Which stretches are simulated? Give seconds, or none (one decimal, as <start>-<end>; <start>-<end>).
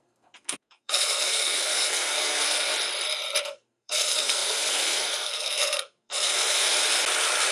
0.0-2.7; 3.4-6.8